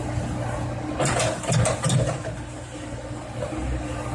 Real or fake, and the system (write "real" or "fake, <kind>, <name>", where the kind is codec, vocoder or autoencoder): real